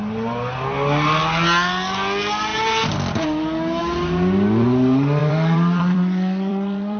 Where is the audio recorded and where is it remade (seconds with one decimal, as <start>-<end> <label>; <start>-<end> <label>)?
0.0-5.2 recorded; 5.2-7.0 remade